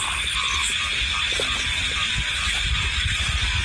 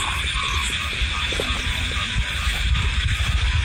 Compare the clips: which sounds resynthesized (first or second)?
second